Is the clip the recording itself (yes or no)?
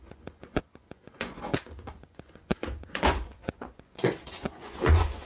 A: no